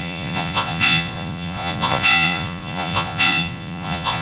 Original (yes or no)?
no